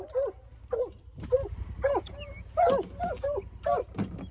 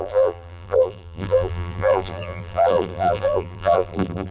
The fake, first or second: second